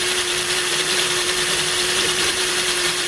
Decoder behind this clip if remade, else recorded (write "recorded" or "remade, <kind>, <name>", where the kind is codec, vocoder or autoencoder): remade, vocoder, BigVGAN v2